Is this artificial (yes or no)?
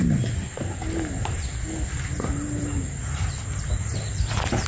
no